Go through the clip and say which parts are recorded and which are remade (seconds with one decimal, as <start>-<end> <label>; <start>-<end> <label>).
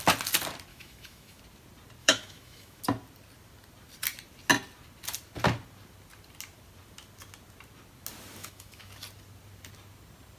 0.0-0.7 recorded; 0.7-1.4 remade; 1.4-2.0 recorded; 2.0-2.8 remade; 2.8-8.4 recorded; 8.4-8.9 remade; 8.9-10.4 recorded